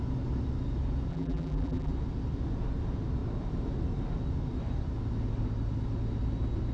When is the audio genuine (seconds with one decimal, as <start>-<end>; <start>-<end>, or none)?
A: 0.0-1.1; 1.9-6.7